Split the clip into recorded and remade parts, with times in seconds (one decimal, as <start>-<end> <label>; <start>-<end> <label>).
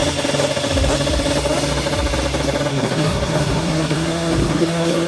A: 0.0-2.7 recorded; 2.7-5.1 remade